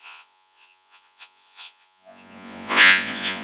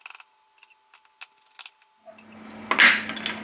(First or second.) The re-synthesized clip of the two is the first